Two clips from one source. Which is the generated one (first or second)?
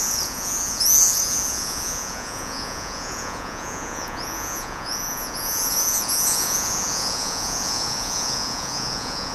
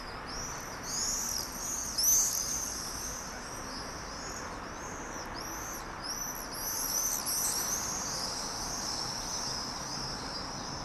first